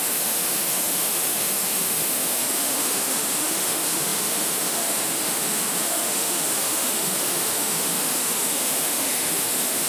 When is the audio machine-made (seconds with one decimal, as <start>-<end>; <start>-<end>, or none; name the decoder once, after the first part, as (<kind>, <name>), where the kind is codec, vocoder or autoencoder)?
0.0-9.9 (autoencoder, DAC-VAE)